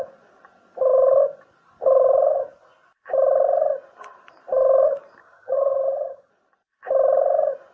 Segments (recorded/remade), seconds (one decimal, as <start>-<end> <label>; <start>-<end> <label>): 0.0-5.2 recorded; 5.2-6.3 remade; 6.3-7.7 recorded